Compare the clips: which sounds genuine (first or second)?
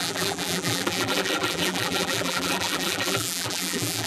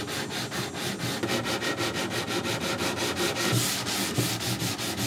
second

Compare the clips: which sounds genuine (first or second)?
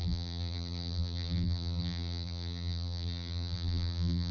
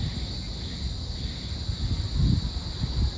second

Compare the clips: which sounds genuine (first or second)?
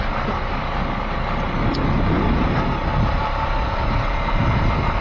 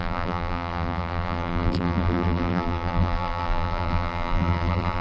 first